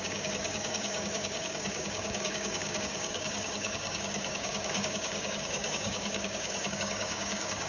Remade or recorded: remade